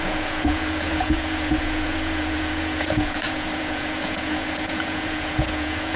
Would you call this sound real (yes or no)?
no